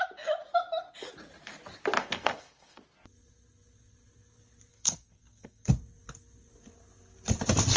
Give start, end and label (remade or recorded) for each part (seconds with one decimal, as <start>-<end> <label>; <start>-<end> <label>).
0.0-2.0 recorded; 2.0-2.8 remade; 2.8-4.7 recorded; 4.7-5.7 remade; 5.7-7.8 recorded